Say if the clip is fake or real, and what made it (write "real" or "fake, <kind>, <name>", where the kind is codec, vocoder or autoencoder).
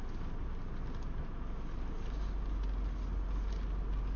real